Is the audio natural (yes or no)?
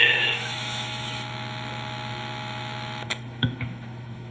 no